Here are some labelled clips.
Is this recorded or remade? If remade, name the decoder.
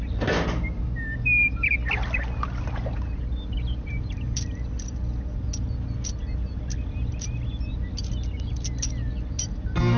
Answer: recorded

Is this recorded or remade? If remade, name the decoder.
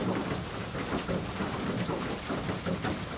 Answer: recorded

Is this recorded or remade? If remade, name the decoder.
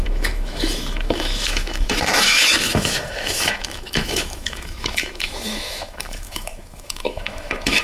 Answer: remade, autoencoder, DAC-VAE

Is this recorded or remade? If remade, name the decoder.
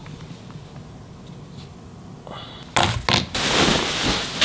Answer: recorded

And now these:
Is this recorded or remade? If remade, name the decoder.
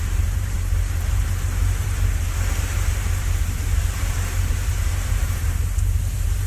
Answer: remade, vocoder, BigVGAN v2